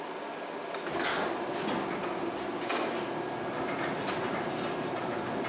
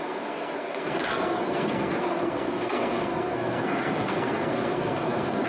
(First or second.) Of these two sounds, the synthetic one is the second